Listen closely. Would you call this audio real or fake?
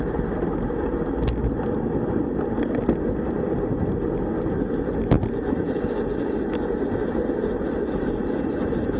real